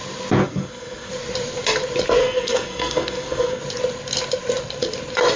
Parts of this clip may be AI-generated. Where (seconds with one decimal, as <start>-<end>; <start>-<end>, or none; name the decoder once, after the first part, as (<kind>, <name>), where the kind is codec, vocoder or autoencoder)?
0.4-1.1 (codec, SNAC); 2.2-3.6